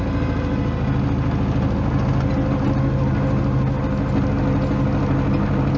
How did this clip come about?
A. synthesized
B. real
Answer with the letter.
B